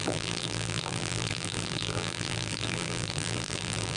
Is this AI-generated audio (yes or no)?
yes